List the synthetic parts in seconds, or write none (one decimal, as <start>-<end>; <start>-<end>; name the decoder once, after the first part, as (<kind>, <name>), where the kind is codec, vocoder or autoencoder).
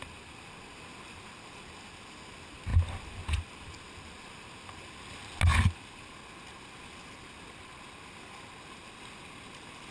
none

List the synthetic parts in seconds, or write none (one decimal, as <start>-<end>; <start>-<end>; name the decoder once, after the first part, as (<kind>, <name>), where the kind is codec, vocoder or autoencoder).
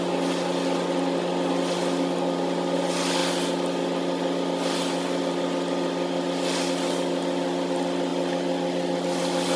none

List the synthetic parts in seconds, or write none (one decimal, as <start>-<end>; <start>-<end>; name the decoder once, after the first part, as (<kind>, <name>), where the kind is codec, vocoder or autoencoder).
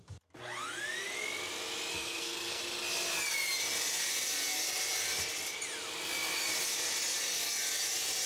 1.9-2.6 (codec, SNAC)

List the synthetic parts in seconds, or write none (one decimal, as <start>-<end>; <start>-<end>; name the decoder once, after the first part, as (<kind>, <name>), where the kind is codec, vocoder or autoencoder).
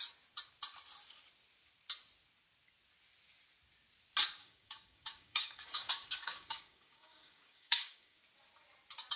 4.4-8.2 (codec, DAC)